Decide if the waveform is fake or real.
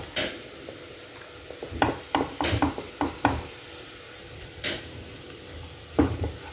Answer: real